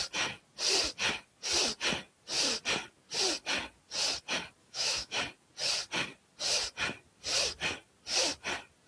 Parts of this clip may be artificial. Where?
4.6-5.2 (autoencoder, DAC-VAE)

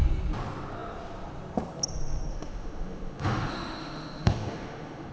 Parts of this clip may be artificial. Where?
2.3-5.1 (autoencoder, DAC-VAE)

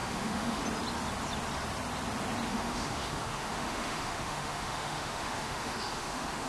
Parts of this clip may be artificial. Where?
0.0-0.6 (autoencoder, DAC-VAE); 2.5-6.5

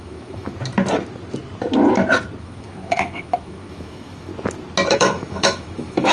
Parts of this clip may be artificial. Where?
0.0-0.5 (autoencoder, DAC-VAE); 2.4-4.3; 4.9-6.1

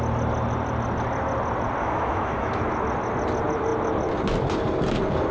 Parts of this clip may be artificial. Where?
1.8-2.6 (autoencoder, DAC-VAE)

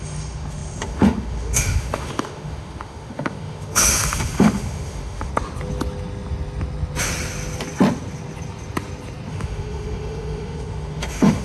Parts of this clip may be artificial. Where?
0.0-5.3 (autoencoder, DAC-VAE); 9.3-11.4

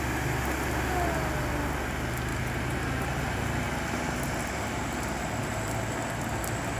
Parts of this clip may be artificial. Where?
none

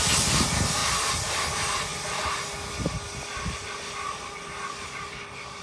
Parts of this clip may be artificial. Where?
none